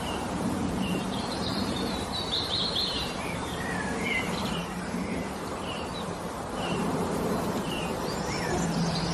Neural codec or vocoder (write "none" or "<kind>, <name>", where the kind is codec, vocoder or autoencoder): vocoder, BigVGAN v2